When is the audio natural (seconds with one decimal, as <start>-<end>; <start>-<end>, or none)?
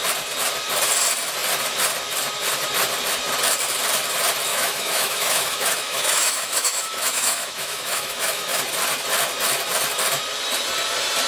0.0-4.5; 8.6-11.3